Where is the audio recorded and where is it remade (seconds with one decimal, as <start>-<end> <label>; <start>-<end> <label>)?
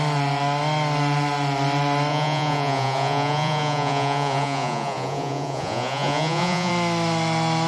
0.0-2.1 recorded; 2.1-6.7 remade; 6.7-7.7 recorded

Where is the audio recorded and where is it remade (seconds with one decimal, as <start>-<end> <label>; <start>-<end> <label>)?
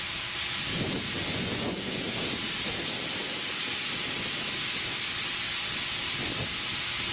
0.0-1.3 recorded; 1.3-2.0 remade; 2.0-7.1 recorded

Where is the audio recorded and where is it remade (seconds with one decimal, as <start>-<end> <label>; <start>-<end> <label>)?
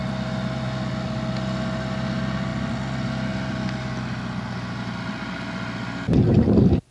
0.0-6.9 recorded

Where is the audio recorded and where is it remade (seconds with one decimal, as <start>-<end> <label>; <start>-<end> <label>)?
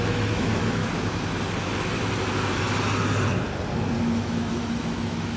0.0-0.8 remade; 0.8-4.0 recorded; 4.0-5.4 remade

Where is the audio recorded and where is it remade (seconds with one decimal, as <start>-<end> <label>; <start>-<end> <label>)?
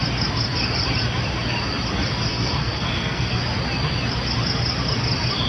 0.0-2.3 recorded; 2.3-3.4 remade; 3.4-5.5 recorded